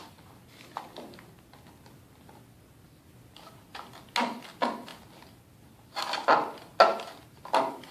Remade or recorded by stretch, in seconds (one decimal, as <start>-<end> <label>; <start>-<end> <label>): 0.0-7.9 recorded